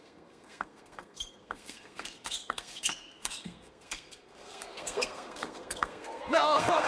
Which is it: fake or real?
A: fake